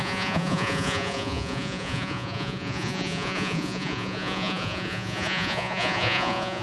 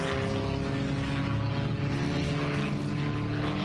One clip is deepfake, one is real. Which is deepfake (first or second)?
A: first